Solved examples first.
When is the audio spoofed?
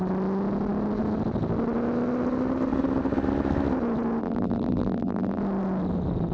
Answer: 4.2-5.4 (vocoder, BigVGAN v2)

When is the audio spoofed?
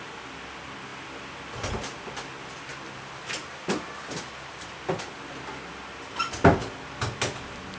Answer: 2.7-3.6 (vocoder, BigVGAN v2)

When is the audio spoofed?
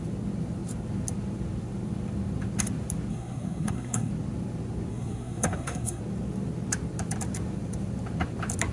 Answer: 3.1-4.1 (codec, SNAC); 4.9-6.0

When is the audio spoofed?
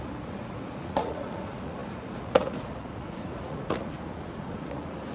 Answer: 0.0-5.1 (vocoder, Vocos)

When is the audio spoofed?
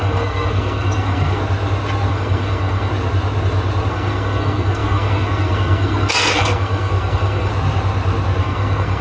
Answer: 0.0-1.4 (codec, SNAC); 2.1-2.9; 3.9-7.5; 8.4-9.0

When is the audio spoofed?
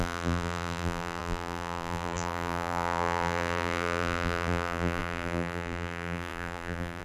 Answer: 0.0-7.0 (vocoder, BigVGAN v2)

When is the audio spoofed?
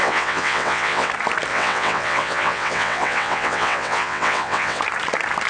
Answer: 0.0-1.1 (vocoder, WaveNeXt); 1.5-4.8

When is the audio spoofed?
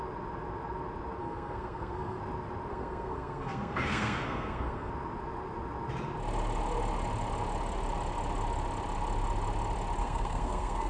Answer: 1.2-2.2 (codec, SNAC); 2.7-4.9; 10.0-10.9